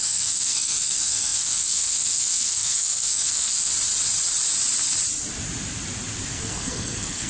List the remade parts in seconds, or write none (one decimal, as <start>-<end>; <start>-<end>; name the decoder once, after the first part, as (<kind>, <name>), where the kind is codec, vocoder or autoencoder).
0.0-3.7 (codec, SNAC); 6.3-7.3